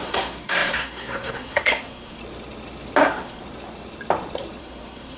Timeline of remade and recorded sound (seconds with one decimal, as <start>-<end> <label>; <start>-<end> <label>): 0.0-2.2 remade; 2.2-3.0 recorded; 3.0-3.4 remade; 3.4-4.6 recorded; 4.6-5.2 remade